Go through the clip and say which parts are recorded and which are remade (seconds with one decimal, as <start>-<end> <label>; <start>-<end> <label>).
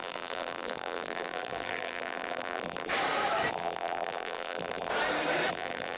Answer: 0.0-2.9 remade; 2.9-3.5 recorded; 3.5-4.9 remade; 4.9-5.5 recorded; 5.5-6.0 remade